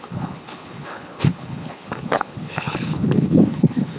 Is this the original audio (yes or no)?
no